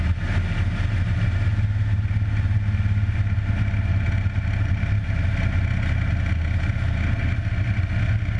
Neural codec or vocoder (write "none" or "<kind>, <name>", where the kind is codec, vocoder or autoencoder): none